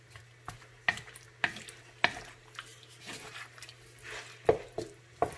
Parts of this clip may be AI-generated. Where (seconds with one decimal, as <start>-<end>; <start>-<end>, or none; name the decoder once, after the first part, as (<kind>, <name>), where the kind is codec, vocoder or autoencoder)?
none